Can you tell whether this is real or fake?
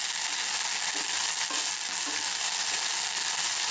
real